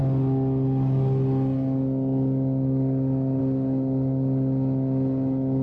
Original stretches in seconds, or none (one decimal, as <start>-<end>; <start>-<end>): 0.0-5.6